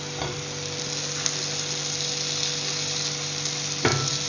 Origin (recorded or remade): recorded